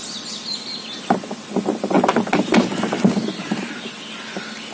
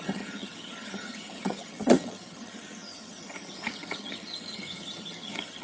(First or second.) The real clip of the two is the first